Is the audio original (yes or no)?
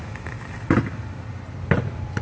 yes